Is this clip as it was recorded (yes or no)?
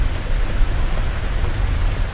yes